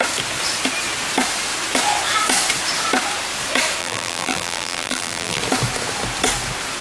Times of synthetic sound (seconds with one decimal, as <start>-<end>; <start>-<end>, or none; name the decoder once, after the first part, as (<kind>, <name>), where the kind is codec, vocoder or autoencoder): 3.8-5.4 (vocoder, BigVGAN v2)